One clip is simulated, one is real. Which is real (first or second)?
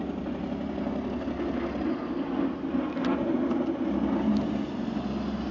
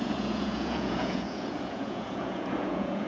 first